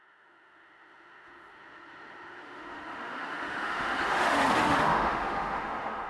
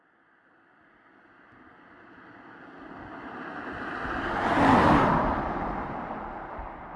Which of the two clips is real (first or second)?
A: second